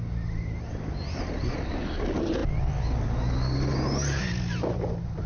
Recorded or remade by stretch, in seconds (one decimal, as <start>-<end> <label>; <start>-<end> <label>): 0.0-5.3 recorded